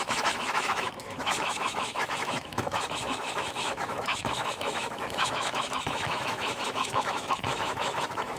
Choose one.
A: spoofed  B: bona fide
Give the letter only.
A